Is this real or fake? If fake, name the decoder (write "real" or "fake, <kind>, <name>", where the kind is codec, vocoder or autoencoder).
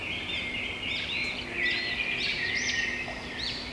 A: real